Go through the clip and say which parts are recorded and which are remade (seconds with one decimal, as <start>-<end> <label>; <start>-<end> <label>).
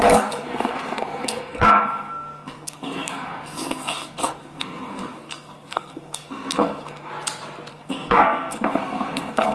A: 0.0-7.1 remade; 7.1-7.7 recorded; 7.7-9.5 remade